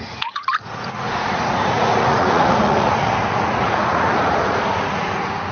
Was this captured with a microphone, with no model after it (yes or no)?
no